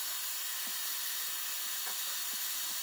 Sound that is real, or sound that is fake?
real